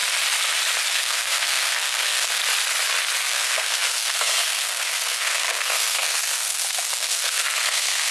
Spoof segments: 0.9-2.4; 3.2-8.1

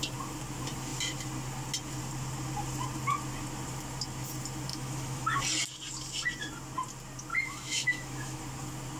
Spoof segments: 4.7-5.4; 7.3-8.4

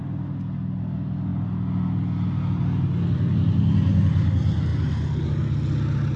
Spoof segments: none

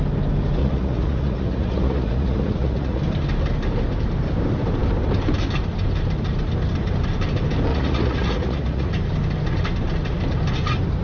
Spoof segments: 0.6-3.0; 7.7-8.9

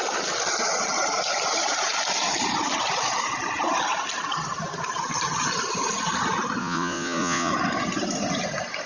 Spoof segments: 6.6-7.5

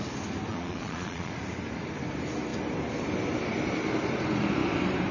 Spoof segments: 0.5-1.3

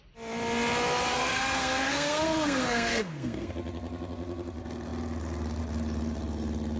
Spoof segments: 1.1-3.5